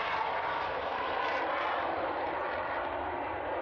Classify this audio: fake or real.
real